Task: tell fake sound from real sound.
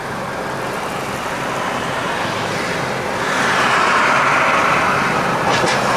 real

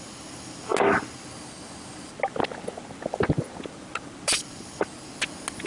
real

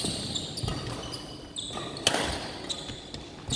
real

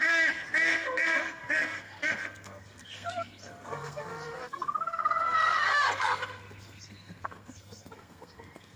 fake